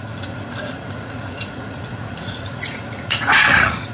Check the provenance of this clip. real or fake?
fake